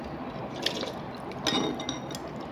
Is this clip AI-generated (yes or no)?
no